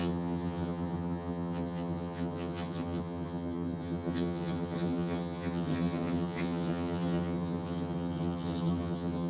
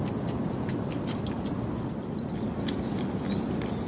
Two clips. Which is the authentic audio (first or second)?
second